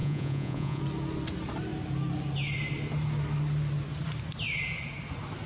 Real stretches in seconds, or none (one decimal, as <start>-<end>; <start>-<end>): 0.8-5.5